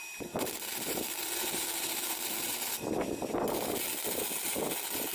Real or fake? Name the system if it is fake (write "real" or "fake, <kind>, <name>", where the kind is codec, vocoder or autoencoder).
real